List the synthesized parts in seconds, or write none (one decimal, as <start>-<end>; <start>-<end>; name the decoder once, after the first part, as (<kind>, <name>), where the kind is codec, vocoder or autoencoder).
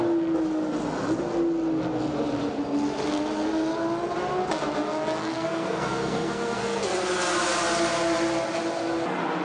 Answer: 5.2-6.8 (codec, SNAC)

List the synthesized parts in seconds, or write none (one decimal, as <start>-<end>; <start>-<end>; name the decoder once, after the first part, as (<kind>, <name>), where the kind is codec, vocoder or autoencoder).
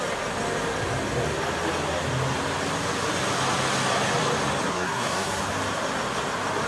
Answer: 4.7-5.4 (codec, SNAC)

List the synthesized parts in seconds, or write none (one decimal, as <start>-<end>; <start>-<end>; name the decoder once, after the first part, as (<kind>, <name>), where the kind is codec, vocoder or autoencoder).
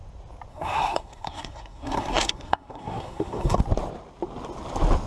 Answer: 0.5-3.6 (codec, SNAC)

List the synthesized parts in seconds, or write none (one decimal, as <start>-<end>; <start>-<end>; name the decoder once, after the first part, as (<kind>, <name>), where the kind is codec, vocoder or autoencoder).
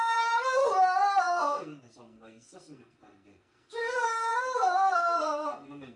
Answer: 0.0-0.6 (codec, SNAC); 1.2-6.0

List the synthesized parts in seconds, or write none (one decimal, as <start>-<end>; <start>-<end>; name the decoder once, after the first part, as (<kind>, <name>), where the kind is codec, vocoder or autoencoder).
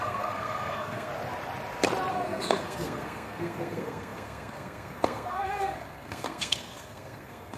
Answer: 0.0-1.1 (codec, SNAC); 2.1-7.6